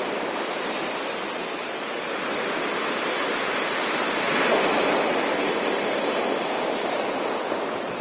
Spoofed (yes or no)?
no